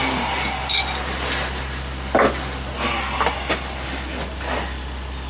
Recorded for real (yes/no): yes